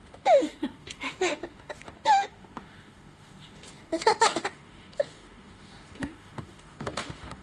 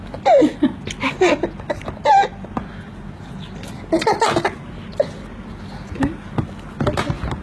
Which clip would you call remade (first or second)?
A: first